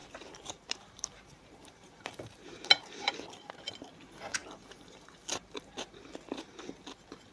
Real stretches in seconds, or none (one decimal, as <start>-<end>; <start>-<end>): 3.1-4.4; 6.6-7.3